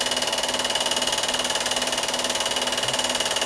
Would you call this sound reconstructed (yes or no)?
no